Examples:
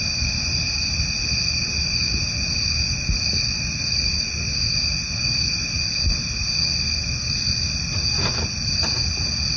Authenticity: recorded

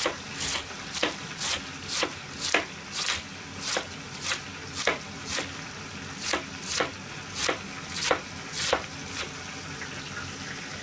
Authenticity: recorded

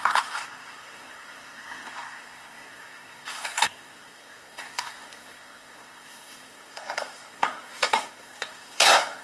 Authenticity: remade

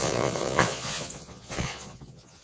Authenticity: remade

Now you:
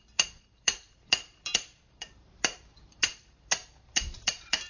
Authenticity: remade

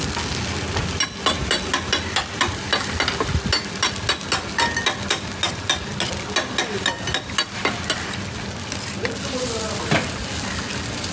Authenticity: recorded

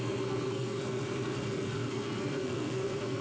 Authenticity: remade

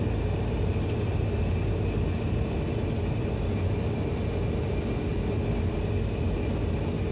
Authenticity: recorded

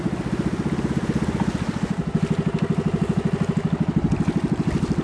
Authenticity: recorded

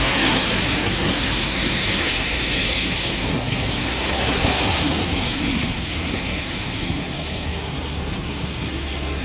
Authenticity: remade